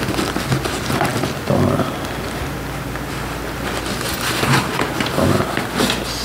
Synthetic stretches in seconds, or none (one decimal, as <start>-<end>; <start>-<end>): 1.1-4.3

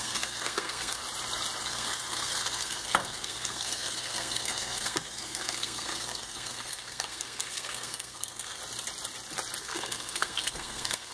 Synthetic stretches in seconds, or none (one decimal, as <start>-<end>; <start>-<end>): 0.0-1.0; 1.6-8.6; 9.6-11.1

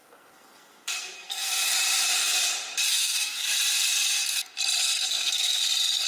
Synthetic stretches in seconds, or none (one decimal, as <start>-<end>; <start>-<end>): 0.0-1.7; 2.9-3.5; 4.8-5.6